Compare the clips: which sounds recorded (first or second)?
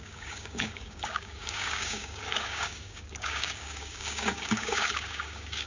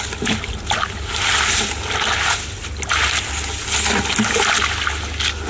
second